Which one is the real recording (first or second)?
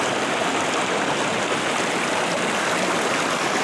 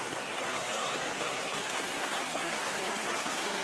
first